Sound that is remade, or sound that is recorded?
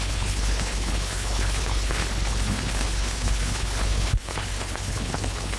remade